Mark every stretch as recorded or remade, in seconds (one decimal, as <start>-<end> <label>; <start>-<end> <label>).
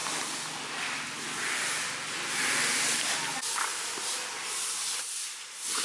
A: 0.0-3.7 recorded; 3.7-5.1 remade; 5.1-5.8 recorded